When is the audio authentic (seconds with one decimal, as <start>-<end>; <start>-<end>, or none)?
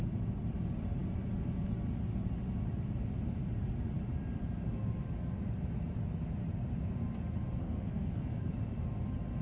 0.0-7.6; 8.5-9.4